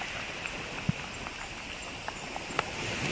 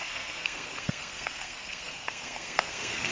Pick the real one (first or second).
first